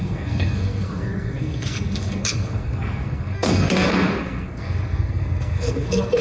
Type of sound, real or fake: fake